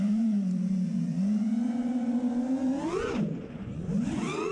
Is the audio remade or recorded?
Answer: remade